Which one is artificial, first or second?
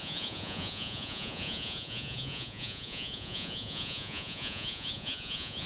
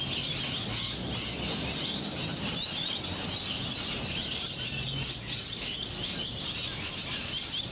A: first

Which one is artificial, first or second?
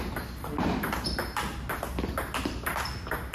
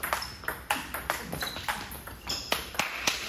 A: second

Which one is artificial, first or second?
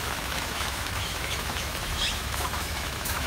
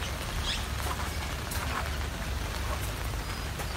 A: first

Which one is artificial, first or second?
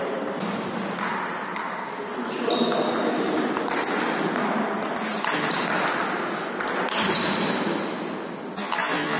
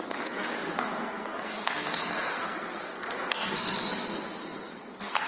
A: second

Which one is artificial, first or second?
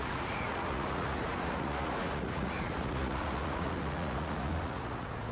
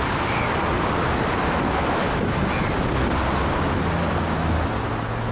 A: first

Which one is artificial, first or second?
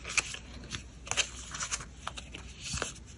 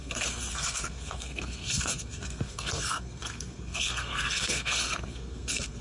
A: second